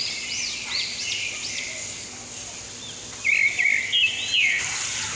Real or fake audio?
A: real